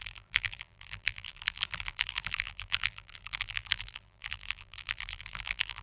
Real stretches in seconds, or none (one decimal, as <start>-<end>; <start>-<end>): none